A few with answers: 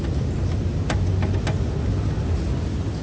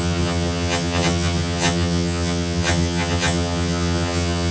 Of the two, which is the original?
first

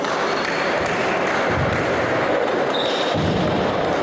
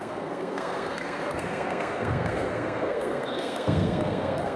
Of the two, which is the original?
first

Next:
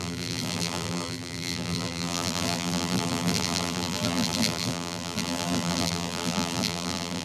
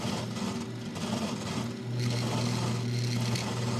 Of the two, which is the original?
second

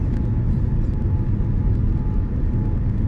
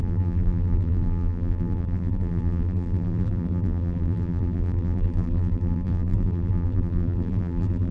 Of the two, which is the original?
first